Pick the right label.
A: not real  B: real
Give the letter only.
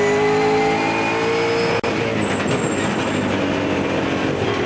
B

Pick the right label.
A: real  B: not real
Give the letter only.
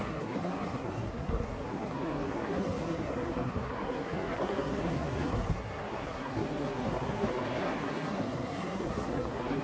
B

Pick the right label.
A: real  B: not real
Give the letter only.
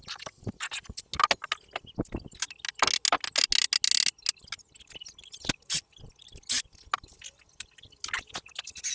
A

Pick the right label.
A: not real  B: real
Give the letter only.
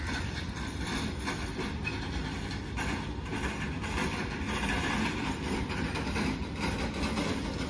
B